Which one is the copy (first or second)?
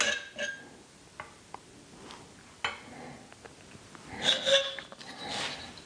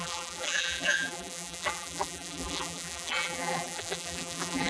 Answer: second